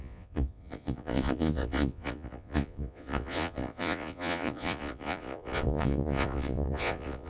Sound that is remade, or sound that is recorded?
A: remade